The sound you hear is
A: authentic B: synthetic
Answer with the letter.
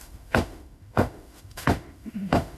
B